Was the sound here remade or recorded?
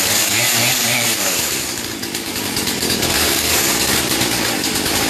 remade